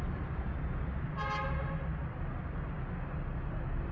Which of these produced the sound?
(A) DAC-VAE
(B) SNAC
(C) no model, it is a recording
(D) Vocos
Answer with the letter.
C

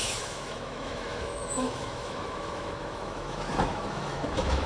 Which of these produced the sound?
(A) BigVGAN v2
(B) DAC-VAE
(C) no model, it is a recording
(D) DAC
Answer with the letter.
B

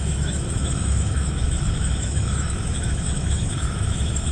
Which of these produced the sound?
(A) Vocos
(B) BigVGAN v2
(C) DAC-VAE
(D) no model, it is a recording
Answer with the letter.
C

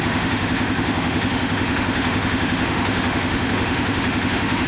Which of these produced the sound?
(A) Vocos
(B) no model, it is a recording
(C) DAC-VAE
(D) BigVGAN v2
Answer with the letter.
C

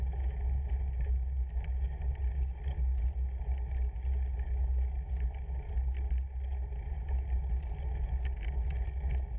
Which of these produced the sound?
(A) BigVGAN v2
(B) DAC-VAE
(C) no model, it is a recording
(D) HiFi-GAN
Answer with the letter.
C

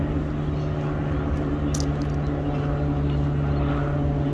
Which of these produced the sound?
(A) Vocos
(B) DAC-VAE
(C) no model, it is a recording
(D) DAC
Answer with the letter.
C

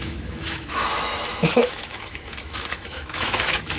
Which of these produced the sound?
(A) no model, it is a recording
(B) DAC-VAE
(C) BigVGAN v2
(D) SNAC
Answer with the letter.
B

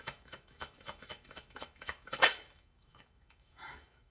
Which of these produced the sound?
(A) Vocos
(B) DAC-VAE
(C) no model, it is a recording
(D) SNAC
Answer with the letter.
B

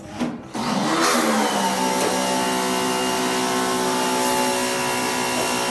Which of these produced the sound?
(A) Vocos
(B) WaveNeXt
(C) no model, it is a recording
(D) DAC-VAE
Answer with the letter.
C